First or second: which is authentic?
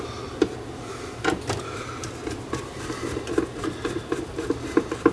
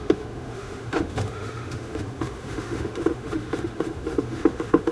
first